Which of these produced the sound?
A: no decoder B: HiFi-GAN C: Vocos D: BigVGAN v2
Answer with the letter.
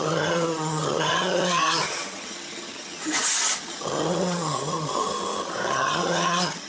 B